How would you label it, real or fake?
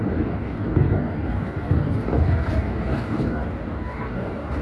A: fake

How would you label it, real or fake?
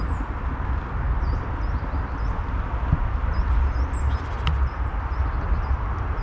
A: real